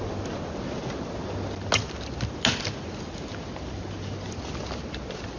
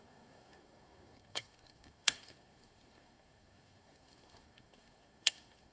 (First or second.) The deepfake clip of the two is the second